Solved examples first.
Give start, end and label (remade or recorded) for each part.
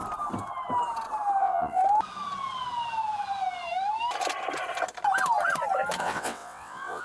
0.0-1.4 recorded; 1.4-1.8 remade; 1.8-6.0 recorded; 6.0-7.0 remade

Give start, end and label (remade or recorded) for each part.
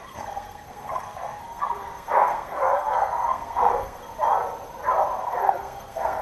0.0-4.0 remade; 4.0-5.2 recorded; 5.2-6.2 remade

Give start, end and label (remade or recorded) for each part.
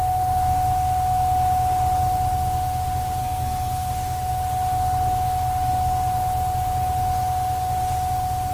0.0-3.2 recorded; 3.2-3.9 remade; 3.9-8.5 recorded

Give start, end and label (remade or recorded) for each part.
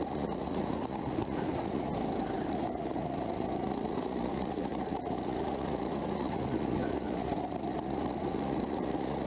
0.0-1.9 remade; 1.9-2.5 recorded; 2.5-9.3 remade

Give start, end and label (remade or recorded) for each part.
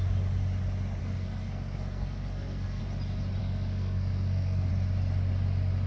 0.0-1.0 recorded; 1.0-2.8 remade; 2.8-3.4 recorded; 3.4-4.7 remade; 4.7-5.9 recorded